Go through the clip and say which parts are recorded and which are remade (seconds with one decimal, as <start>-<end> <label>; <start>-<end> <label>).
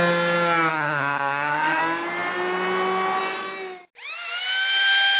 0.0-0.7 recorded; 0.7-1.8 remade; 1.8-5.2 recorded